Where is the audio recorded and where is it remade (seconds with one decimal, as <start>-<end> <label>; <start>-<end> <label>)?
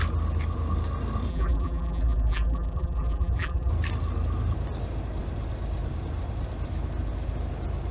0.0-1.3 recorded; 1.3-3.7 remade; 3.7-7.9 recorded